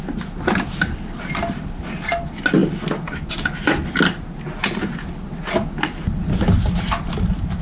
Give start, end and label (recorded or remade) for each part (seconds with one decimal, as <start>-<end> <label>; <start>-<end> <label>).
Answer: 0.0-7.6 recorded